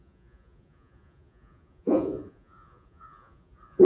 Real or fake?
fake